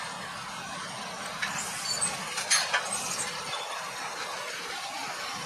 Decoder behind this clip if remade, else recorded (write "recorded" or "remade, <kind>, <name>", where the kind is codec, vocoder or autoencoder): recorded